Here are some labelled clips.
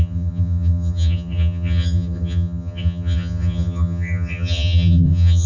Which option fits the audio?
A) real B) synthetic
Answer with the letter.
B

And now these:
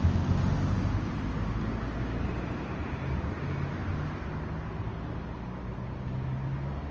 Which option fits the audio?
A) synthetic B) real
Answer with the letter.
B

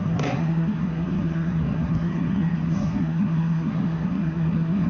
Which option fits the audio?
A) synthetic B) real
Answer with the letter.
A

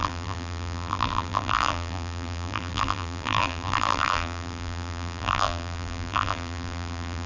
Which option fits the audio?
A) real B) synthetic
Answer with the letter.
B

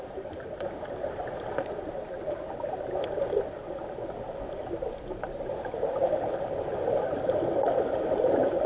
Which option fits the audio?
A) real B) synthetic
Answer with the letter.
A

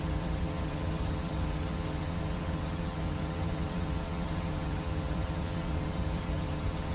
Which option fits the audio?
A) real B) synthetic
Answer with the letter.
B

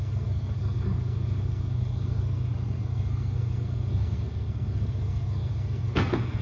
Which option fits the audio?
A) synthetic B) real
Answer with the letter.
A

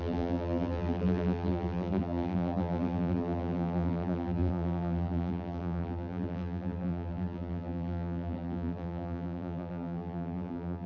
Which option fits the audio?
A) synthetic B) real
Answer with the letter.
A